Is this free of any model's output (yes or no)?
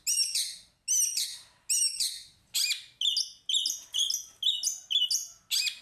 yes